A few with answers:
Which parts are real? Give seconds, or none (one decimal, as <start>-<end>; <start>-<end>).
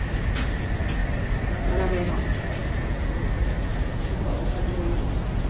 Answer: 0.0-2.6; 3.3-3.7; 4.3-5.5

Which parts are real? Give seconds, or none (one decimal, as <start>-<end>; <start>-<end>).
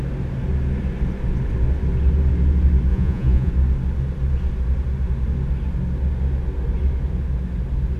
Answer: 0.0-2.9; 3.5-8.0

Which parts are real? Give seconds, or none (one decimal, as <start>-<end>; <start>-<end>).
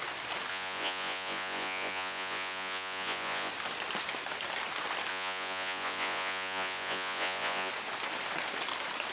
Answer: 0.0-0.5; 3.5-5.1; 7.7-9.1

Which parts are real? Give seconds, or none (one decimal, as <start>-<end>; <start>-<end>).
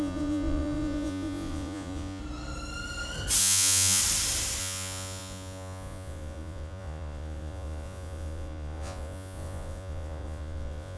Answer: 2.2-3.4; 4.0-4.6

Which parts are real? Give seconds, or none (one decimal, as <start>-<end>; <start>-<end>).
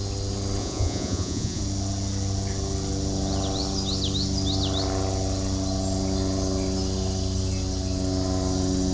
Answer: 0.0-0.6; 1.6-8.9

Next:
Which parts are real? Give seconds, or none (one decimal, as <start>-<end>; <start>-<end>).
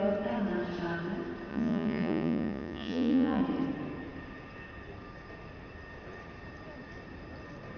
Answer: 0.0-1.5; 3.4-7.8